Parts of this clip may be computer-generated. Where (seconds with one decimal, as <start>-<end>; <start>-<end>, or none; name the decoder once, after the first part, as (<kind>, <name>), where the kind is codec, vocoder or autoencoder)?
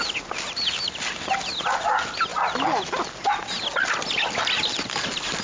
none